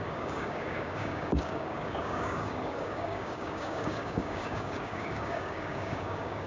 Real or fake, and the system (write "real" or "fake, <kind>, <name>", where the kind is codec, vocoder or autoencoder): fake, codec, DAC